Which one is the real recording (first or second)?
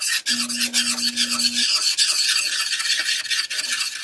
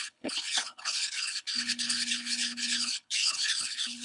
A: first